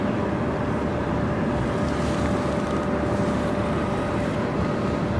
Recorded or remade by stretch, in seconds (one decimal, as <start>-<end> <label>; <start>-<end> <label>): 0.0-5.2 recorded